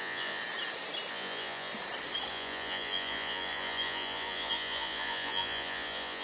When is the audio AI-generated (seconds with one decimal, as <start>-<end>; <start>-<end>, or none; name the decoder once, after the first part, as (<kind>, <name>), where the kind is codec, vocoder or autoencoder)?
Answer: 0.0-0.4 (vocoder, Vocos); 1.1-1.7; 2.3-6.2